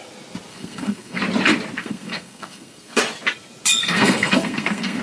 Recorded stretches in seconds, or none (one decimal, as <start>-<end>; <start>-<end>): 0.0-0.5; 1.2-1.8; 3.0-3.8

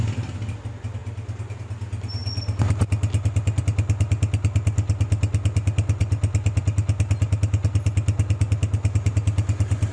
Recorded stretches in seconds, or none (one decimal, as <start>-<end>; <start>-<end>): 0.0-9.9

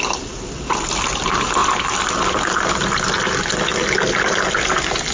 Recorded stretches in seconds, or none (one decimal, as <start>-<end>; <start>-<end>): 0.0-5.1

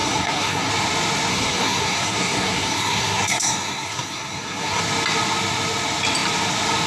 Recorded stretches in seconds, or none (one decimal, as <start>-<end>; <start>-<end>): 0.7-1.3; 4.8-6.9

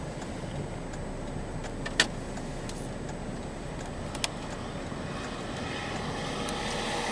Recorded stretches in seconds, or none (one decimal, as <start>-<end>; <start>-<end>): 0.0-7.1

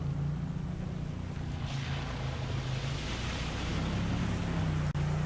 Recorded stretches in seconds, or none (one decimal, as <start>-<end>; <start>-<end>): 0.0-5.3

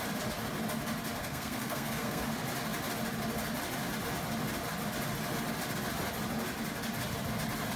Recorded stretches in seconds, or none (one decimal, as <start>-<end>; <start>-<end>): 0.0-1.2; 2.2-7.8